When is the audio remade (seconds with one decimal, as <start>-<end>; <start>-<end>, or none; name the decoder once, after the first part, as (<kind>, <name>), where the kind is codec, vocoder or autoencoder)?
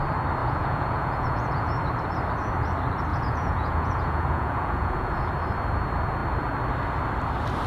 0.4-1.7 (vocoder, Vocos); 3.1-5.3